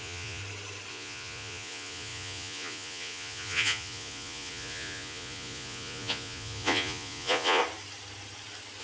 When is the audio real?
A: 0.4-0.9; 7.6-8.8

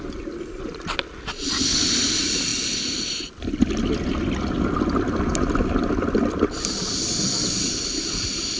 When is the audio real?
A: 0.0-8.6

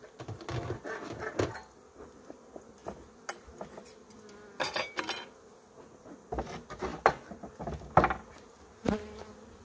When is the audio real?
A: 0.0-9.6

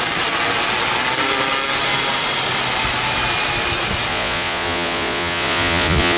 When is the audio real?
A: 0.0-4.1